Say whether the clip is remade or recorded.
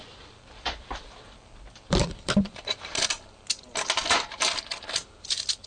remade